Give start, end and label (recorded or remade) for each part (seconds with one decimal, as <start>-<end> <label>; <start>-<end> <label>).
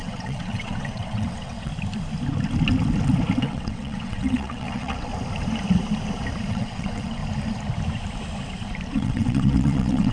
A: 0.0-1.7 remade; 1.7-3.4 recorded; 3.4-5.1 remade; 5.1-6.5 recorded; 6.5-7.2 remade; 7.2-8.9 recorded; 8.9-10.1 remade